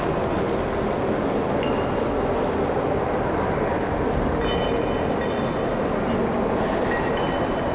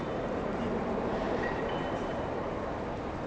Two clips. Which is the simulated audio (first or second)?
second